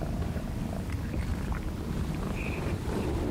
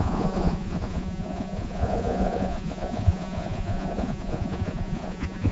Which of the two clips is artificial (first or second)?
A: second